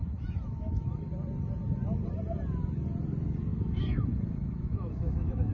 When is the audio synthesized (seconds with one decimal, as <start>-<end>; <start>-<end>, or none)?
0.0-1.1; 3.5-5.5